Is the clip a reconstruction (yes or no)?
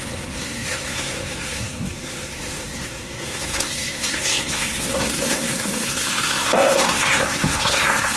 yes